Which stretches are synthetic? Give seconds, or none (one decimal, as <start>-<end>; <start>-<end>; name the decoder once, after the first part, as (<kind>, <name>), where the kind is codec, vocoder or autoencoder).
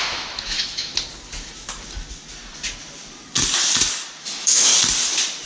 0.0-0.9 (autoencoder, DAC-VAE); 4.2-4.7